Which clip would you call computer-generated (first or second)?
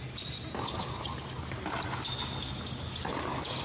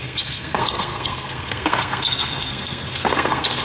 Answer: second